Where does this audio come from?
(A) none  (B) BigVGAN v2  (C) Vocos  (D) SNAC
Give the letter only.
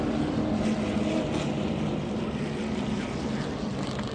A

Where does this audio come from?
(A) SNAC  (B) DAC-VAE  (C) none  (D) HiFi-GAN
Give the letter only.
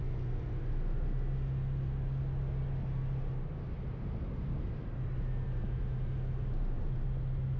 C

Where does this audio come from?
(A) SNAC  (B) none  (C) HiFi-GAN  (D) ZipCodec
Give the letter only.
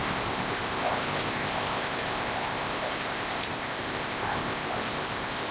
D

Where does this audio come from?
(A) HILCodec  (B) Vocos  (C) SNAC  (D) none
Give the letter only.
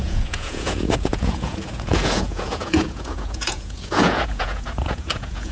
B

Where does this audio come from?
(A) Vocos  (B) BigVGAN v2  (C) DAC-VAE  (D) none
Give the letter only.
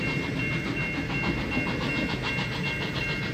D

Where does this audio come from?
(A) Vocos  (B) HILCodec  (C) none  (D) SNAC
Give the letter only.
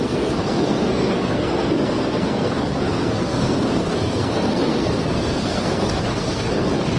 D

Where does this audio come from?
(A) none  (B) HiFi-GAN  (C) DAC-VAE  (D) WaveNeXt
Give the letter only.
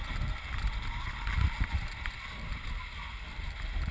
A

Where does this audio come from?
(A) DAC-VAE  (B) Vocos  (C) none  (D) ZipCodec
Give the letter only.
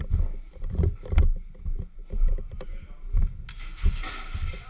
C